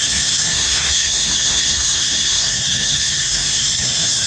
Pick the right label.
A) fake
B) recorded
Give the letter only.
A